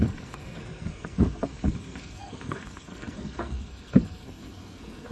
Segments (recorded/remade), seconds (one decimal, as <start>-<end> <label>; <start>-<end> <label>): 0.0-5.1 remade